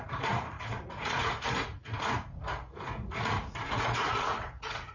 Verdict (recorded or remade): remade